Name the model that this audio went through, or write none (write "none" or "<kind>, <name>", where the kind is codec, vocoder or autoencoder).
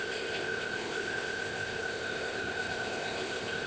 codec, ZipCodec